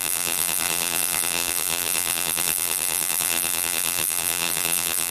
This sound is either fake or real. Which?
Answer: fake